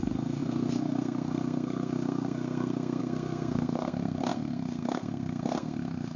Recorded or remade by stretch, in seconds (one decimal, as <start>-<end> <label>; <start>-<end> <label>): 0.0-6.2 remade